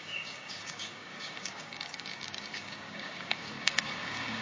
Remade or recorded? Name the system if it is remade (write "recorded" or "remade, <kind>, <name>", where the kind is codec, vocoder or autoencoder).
remade, codec, DAC